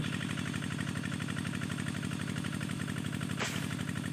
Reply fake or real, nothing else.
real